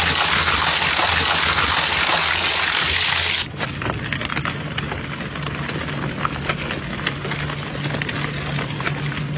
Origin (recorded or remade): recorded